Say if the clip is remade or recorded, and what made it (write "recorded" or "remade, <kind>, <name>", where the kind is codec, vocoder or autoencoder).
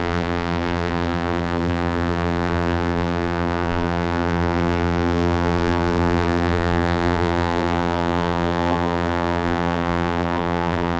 remade, vocoder, BigVGAN v2